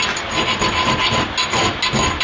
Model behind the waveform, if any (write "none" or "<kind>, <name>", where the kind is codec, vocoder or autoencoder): none